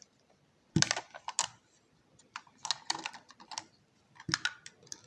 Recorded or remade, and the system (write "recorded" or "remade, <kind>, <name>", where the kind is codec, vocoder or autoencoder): recorded